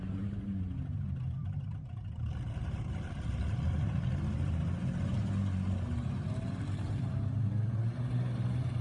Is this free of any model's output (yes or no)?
no